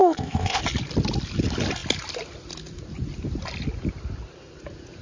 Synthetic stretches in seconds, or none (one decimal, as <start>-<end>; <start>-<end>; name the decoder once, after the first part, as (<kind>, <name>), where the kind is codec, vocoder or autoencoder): 0.0-0.6 (codec, ZipCodec)